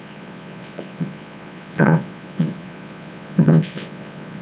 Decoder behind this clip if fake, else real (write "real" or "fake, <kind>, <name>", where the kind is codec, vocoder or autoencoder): fake, vocoder, Vocos